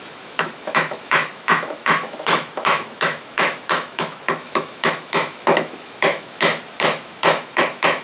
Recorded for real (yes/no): no